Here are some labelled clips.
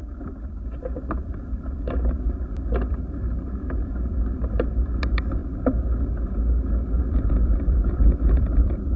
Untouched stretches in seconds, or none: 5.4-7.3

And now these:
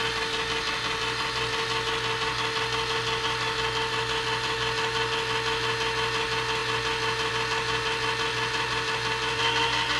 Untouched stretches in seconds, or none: 0.0-10.0

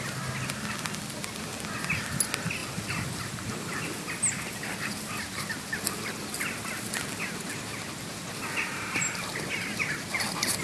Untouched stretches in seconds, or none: 0.0-2.6; 4.4-10.6